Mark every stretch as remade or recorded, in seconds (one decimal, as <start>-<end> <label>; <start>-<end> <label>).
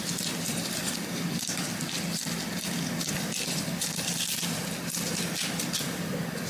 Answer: 0.0-6.5 recorded